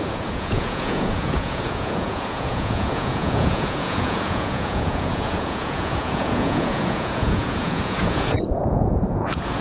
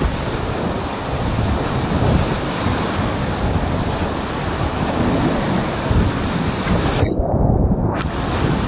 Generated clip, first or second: first